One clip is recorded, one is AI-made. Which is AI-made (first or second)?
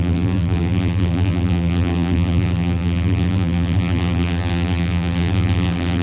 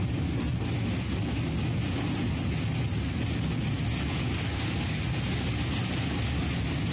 first